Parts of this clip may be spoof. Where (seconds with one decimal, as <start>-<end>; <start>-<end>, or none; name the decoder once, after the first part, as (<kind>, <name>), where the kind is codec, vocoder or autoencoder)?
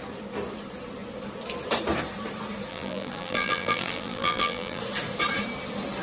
2.7-4.8 (vocoder, BigVGAN v2)